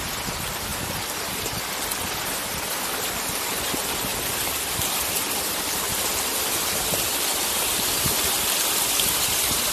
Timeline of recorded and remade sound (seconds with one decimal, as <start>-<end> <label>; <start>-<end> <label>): 0.0-9.7 recorded